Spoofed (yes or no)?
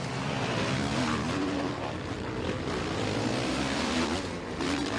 no